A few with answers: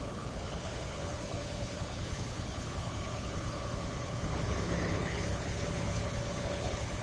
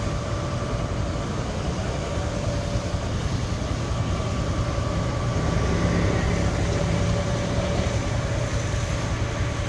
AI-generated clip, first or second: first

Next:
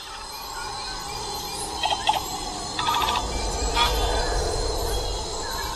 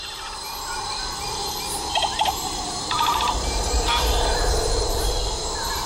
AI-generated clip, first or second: second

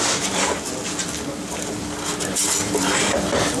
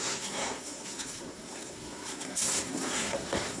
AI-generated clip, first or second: second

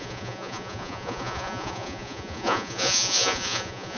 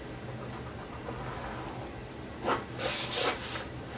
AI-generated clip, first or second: first